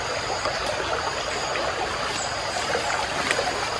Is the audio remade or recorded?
recorded